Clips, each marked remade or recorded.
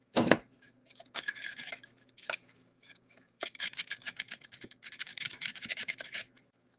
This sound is remade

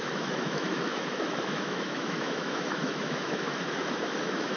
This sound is remade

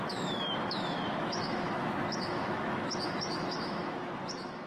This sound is remade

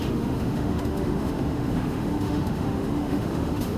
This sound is remade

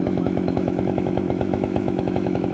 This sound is remade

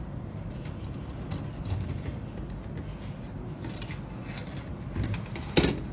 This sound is recorded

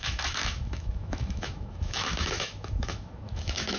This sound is remade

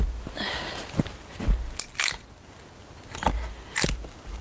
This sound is recorded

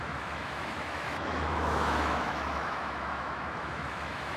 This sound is remade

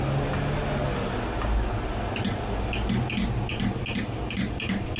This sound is recorded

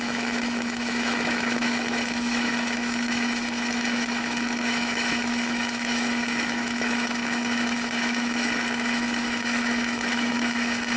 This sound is remade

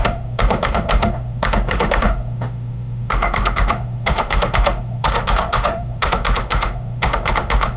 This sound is remade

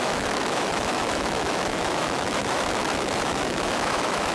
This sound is remade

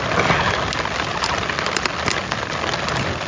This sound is recorded